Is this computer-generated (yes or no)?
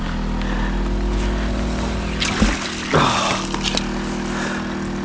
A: no